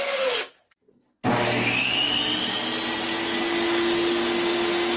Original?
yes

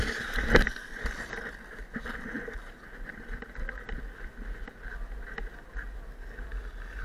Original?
yes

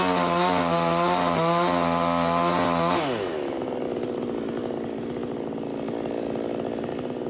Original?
yes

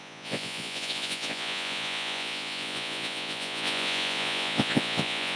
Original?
no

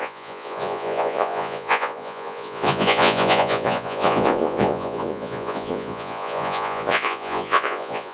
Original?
no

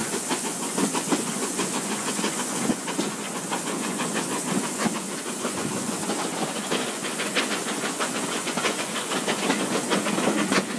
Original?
no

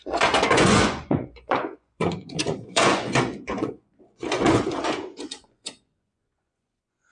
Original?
no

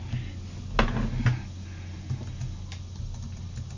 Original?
yes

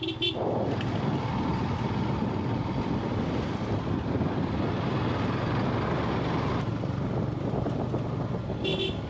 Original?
yes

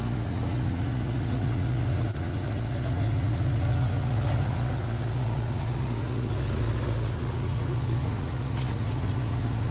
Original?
no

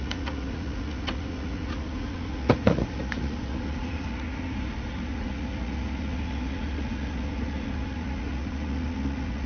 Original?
no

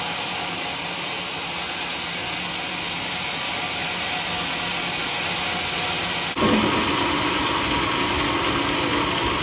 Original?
yes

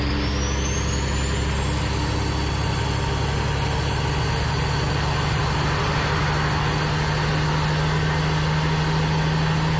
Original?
yes